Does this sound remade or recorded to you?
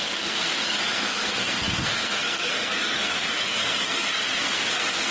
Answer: remade